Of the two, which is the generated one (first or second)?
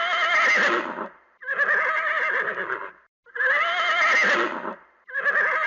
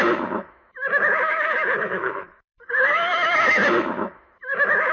second